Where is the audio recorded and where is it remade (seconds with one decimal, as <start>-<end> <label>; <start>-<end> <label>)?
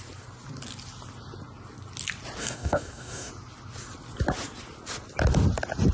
0.0-2.4 recorded; 2.4-3.3 remade; 3.3-5.9 recorded